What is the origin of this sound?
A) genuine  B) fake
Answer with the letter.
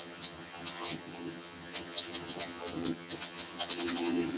B